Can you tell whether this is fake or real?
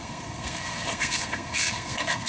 fake